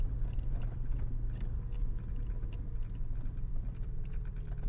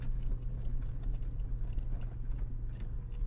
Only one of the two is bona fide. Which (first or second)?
second